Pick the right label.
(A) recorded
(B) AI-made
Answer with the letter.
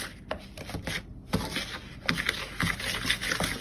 A